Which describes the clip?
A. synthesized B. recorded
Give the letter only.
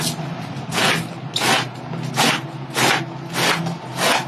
B